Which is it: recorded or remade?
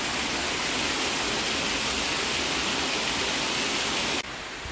recorded